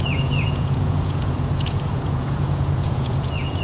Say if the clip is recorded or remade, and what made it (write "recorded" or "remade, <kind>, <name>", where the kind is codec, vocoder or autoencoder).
remade, vocoder, Vocos